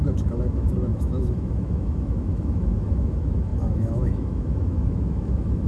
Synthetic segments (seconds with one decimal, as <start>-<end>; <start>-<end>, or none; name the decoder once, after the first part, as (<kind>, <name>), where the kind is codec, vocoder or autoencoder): 0.0-5.7 (autoencoder, DAC-VAE)